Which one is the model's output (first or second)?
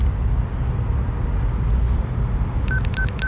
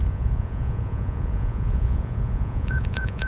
second